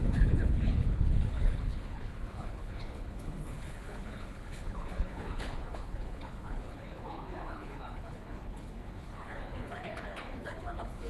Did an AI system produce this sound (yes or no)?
yes